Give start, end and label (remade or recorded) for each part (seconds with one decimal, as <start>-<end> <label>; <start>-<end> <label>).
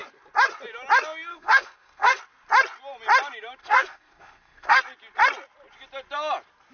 0.0-1.3 recorded; 1.3-2.2 remade; 2.2-3.6 recorded; 3.6-4.8 remade; 4.8-6.7 recorded